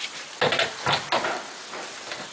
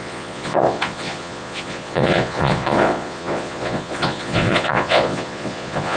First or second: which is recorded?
first